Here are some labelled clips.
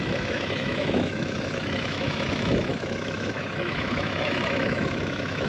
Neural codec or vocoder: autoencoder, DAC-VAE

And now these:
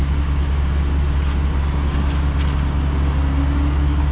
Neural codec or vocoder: none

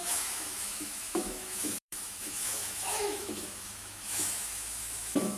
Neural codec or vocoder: autoencoder, DAC-VAE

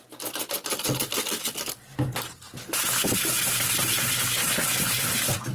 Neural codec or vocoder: none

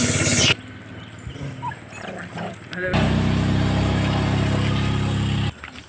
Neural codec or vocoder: none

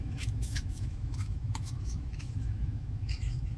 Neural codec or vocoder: autoencoder, DAC-VAE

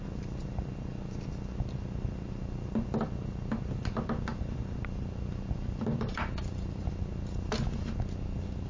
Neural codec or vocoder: none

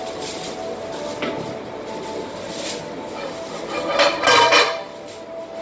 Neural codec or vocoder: none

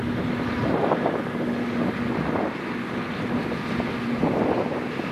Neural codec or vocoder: none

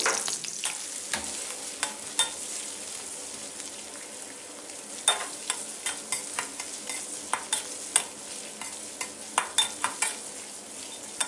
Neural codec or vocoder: none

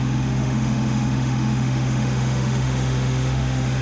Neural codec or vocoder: autoencoder, DAC-VAE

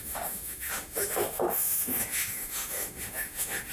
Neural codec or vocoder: autoencoder, DAC-VAE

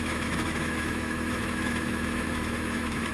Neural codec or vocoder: autoencoder, DAC-VAE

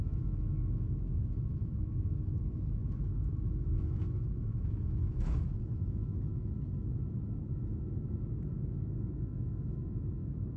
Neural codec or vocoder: autoencoder, DAC-VAE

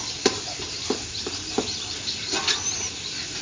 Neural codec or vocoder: none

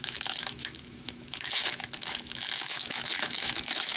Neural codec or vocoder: autoencoder, DAC-VAE